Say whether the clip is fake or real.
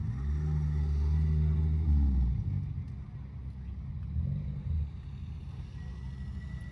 real